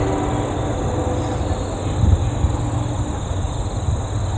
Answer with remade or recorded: recorded